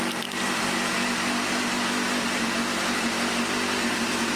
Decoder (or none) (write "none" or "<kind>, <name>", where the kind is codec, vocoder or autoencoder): none